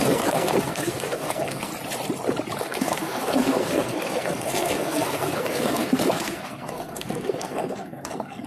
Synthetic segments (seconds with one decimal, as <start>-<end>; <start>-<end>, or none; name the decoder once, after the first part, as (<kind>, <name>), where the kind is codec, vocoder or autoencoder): 0.0-1.7 (codec, SNAC); 2.6-8.5